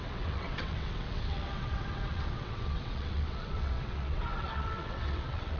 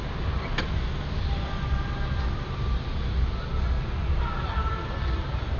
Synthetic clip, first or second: first